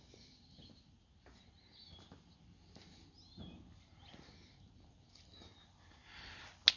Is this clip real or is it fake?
real